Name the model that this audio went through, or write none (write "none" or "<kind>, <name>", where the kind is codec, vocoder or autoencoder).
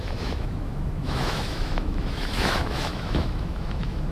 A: autoencoder, DAC-VAE